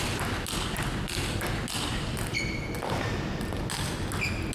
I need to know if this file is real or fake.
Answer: real